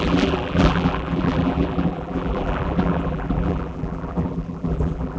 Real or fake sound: fake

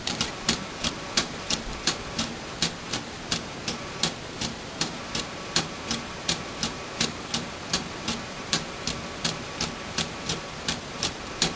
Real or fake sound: fake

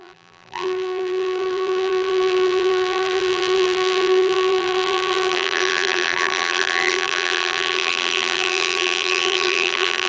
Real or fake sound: fake